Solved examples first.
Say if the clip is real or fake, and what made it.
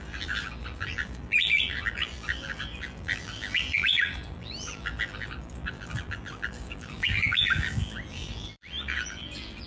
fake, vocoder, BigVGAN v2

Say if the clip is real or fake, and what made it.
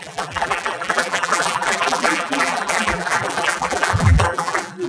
fake, vocoder, BigVGAN v2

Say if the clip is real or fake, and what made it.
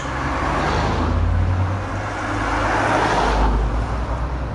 real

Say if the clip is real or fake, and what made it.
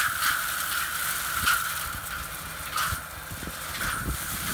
real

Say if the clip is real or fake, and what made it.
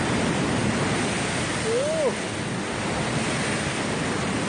real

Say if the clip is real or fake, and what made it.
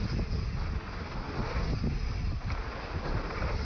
real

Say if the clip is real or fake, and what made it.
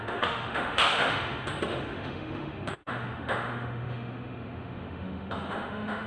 fake, autoencoder, DAC-VAE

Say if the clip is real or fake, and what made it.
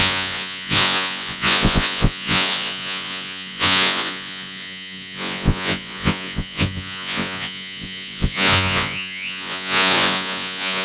fake, vocoder, Vocos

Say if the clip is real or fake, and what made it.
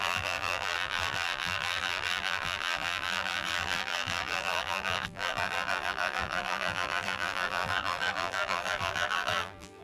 fake, vocoder, BigVGAN v2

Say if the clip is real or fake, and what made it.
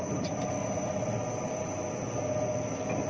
real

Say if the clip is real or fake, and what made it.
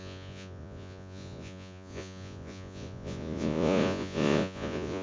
fake, vocoder, Vocos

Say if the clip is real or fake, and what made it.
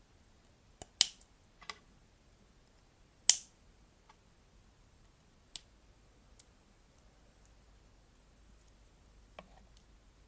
real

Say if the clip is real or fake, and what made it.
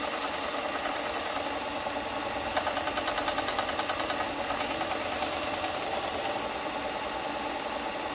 real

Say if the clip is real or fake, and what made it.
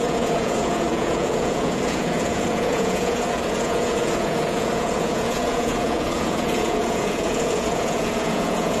fake, vocoder, Vocos